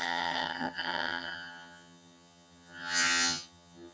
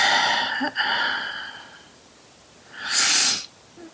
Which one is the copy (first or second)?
first